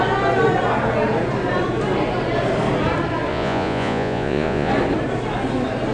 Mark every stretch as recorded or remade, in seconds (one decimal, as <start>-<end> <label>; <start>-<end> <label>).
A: 0.0-3.3 recorded; 3.3-4.7 remade; 4.7-5.9 recorded